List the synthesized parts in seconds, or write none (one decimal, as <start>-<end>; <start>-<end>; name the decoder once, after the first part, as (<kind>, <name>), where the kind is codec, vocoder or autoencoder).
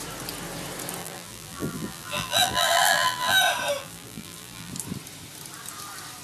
1.0-3.4 (vocoder, BigVGAN v2); 3.8-4.7